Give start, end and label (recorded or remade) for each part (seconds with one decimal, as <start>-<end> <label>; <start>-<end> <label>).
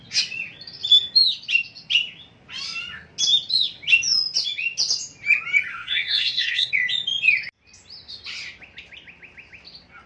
0.0-5.7 recorded; 5.7-6.7 remade; 6.7-10.1 recorded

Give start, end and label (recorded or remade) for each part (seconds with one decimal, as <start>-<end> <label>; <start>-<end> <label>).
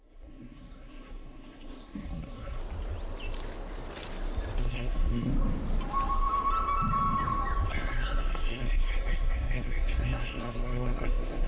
0.0-2.6 remade; 2.6-4.6 recorded; 4.6-5.3 remade; 5.3-7.7 recorded; 7.7-11.5 remade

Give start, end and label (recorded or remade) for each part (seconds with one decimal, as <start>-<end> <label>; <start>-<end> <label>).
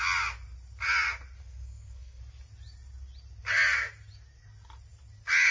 0.0-1.4 recorded; 1.4-2.2 remade; 2.2-5.5 recorded